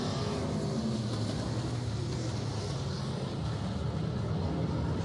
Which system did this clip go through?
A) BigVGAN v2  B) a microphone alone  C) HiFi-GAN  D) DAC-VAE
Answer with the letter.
B